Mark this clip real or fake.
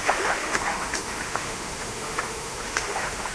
fake